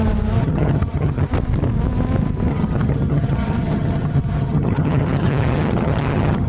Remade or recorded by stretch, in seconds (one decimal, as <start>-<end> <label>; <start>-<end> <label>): 0.0-0.4 recorded; 0.4-1.3 remade; 1.3-2.5 recorded; 2.5-6.5 remade